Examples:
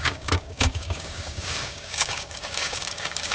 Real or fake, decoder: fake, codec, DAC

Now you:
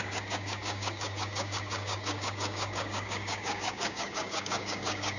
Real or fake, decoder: fake, codec, DAC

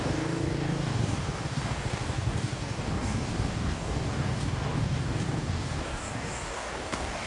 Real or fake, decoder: fake, codec, DAC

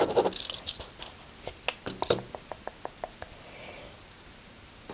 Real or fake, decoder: real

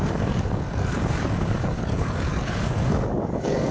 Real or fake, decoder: fake, codec, DAC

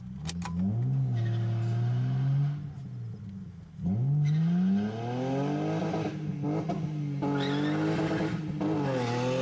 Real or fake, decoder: real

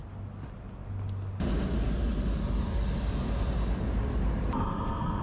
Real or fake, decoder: real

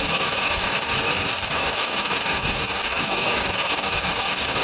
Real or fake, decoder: fake, codec, DAC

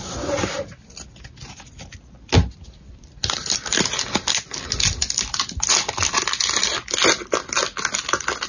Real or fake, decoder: real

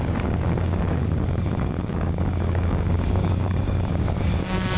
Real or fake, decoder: fake, codec, DAC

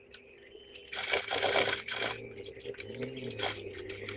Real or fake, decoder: real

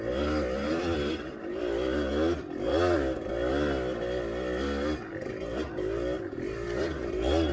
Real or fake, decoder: real